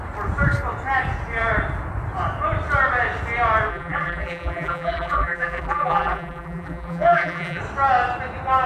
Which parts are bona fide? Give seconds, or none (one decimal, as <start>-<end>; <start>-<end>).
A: 0.0-3.7; 7.6-8.7